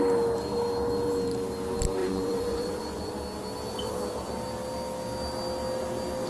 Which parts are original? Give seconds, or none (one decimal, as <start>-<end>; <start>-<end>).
0.0-2.0; 3.1-6.3